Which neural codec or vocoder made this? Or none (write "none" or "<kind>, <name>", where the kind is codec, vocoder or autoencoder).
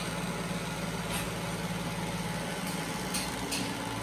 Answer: none